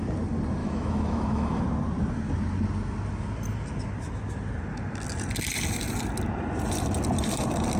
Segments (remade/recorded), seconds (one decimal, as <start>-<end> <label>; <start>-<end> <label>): 0.0-0.6 recorded; 0.6-1.6 remade; 1.6-7.8 recorded